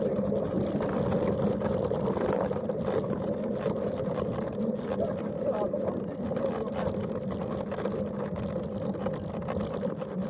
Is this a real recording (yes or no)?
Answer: yes